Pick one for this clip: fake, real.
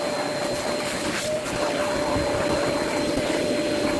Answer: real